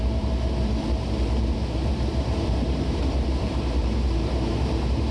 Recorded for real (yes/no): no